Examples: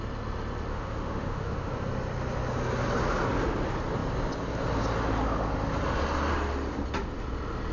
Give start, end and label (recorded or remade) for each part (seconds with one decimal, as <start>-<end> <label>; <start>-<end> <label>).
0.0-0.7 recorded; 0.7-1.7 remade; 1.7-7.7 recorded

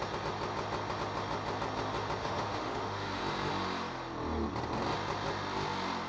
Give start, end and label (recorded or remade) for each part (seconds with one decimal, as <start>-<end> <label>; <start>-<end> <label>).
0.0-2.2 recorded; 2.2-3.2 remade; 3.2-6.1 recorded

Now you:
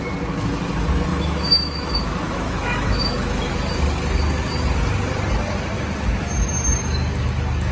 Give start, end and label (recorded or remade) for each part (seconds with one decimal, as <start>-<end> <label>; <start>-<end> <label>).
0.0-1.1 recorded; 1.1-3.5 remade; 3.5-7.7 recorded